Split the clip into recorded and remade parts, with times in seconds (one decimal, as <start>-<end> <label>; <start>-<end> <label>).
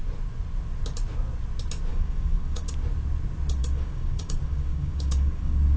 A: 0.0-1.9 recorded; 1.9-2.7 remade; 2.7-3.6 recorded; 3.6-5.8 remade